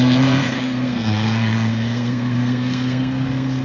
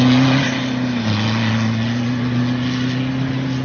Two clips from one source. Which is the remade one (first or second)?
first